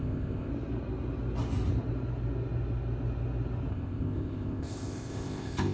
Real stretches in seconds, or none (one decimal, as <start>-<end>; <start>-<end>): 0.5-3.7